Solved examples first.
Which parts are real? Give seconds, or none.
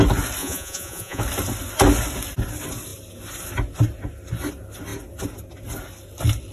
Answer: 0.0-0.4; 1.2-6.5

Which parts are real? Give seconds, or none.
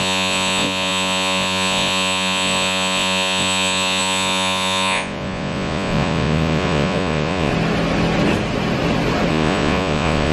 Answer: 7.5-9.3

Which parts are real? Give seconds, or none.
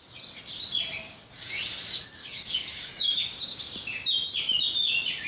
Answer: 0.0-1.0; 1.5-2.2; 3.6-5.3